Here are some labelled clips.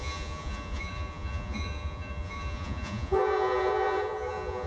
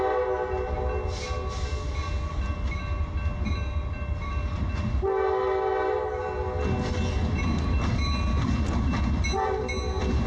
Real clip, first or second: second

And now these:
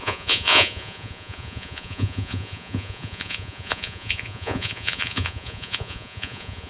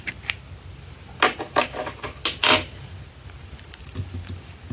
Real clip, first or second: second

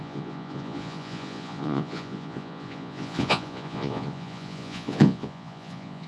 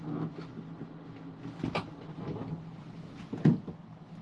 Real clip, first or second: second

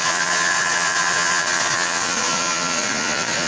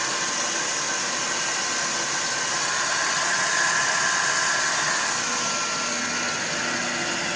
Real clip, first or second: second